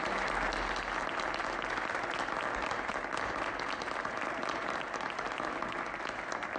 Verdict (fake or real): real